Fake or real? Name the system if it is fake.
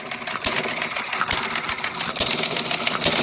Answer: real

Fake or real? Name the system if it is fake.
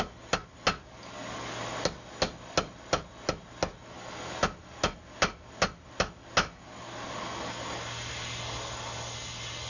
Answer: real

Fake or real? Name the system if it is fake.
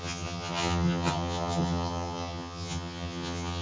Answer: fake, vocoder, HiFi-GAN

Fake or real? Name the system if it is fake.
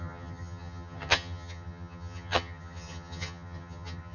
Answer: fake, vocoder, HiFi-GAN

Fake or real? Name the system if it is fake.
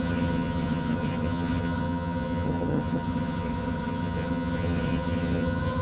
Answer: fake, vocoder, HiFi-GAN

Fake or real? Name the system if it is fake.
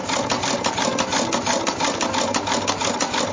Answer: real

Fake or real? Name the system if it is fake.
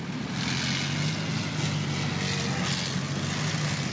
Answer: real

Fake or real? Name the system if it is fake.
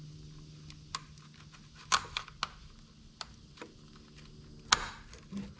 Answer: real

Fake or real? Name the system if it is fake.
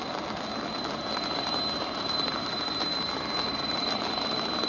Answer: real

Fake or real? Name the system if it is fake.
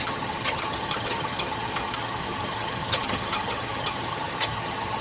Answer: fake, vocoder, HiFi-GAN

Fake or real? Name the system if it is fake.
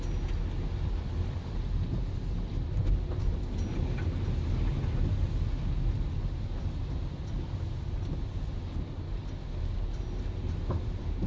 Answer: real